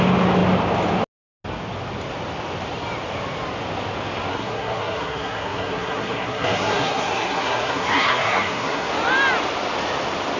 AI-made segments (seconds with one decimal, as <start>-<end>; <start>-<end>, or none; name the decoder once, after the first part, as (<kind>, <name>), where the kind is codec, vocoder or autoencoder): 4.3-8.9 (codec, SNAC)